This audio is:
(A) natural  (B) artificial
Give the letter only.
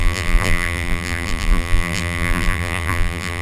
B